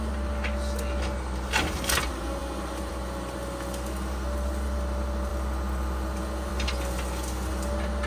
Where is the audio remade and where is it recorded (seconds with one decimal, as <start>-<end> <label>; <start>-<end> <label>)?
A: 0.0-8.1 recorded

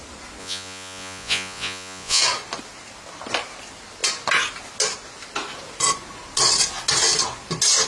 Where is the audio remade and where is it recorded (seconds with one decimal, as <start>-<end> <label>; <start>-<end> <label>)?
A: 0.0-0.4 recorded; 0.4-2.2 remade; 2.2-7.9 recorded

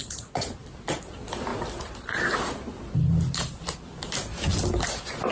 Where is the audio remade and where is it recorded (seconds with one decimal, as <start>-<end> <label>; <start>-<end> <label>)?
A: 0.0-0.5 remade; 0.5-5.3 recorded

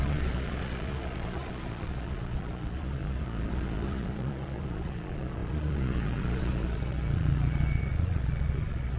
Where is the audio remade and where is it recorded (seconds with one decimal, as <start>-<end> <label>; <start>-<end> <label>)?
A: 0.0-9.0 remade

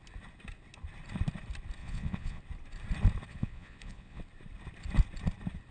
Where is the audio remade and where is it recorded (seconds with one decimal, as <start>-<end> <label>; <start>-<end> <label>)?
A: 0.0-1.8 recorded; 1.8-2.4 remade; 2.4-3.3 recorded; 3.3-4.2 remade; 4.2-5.7 recorded

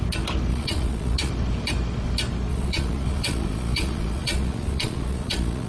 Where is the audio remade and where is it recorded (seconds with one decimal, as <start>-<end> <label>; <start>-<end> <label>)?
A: 0.0-0.5 recorded; 0.5-1.3 remade; 1.3-2.5 recorded; 2.5-5.7 remade

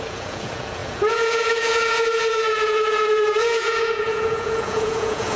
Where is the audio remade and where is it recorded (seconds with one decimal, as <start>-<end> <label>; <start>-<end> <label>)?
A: 0.0-5.4 remade

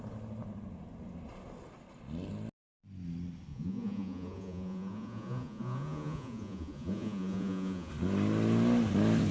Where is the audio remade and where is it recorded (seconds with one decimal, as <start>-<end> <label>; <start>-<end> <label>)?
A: 0.0-3.5 recorded; 3.5-7.9 remade; 7.9-9.3 recorded